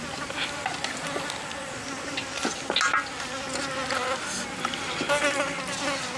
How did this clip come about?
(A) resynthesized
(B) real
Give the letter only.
B